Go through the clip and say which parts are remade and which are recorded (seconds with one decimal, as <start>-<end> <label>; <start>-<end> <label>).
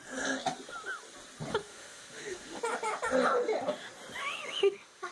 0.0-1.5 recorded; 1.5-2.6 remade; 2.6-4.2 recorded; 4.2-5.1 remade